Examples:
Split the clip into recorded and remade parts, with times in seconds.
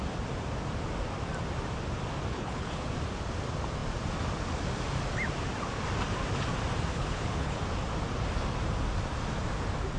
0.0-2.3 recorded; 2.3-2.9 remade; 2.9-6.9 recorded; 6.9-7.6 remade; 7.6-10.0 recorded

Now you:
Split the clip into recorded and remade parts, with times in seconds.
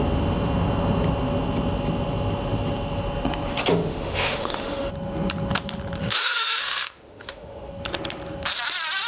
0.0-3.9 recorded; 3.9-4.9 remade; 4.9-6.0 recorded; 6.0-7.7 remade; 7.7-9.1 recorded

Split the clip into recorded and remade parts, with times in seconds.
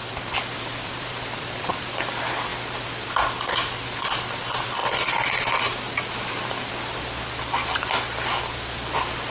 0.0-1.8 remade; 1.8-9.3 recorded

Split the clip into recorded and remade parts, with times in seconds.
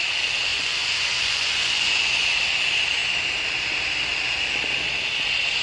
0.0-0.5 recorded; 0.5-2.4 remade; 2.4-5.6 recorded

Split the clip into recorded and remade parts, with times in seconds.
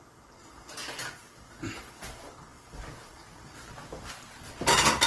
0.0-5.1 recorded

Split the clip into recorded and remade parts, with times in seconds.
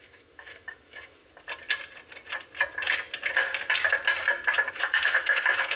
0.0-1.2 remade; 1.2-4.7 recorded; 4.7-5.8 remade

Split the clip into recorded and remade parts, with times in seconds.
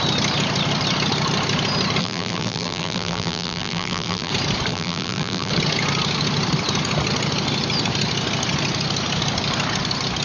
0.0-2.0 recorded; 2.0-4.3 remade; 4.3-4.7 recorded; 4.7-5.5 remade; 5.5-10.2 recorded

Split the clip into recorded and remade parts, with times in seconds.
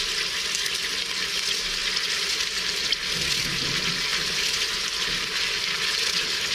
0.0-6.5 recorded